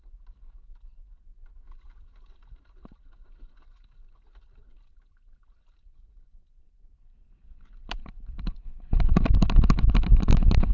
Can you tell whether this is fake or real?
real